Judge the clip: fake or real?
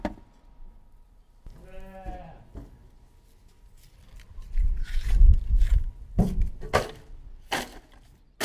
real